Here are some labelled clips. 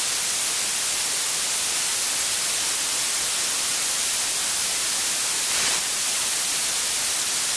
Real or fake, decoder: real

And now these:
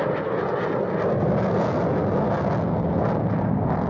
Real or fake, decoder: real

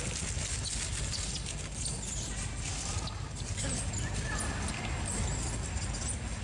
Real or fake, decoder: real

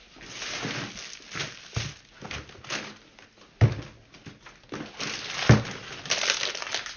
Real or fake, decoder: real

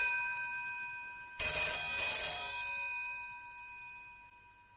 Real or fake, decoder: real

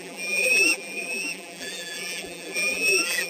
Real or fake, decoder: fake, vocoder, BigVGAN v2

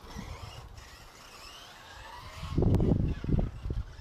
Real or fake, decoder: real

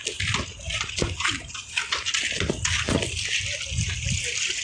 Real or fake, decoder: real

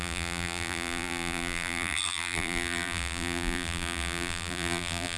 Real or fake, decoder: fake, vocoder, BigVGAN v2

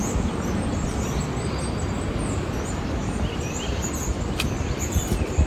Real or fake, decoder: fake, vocoder, BigVGAN v2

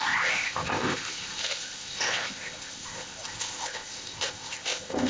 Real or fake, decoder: fake, codec, ZipCodec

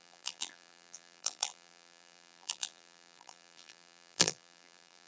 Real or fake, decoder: fake, vocoder, BigVGAN v2